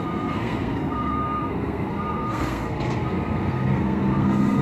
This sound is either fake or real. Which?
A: fake